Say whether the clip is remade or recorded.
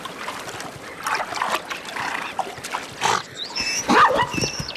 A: remade